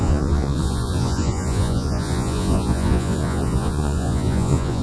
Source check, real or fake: fake